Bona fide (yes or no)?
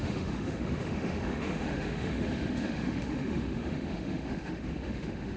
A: no